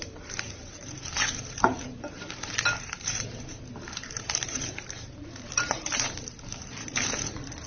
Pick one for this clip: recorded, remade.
remade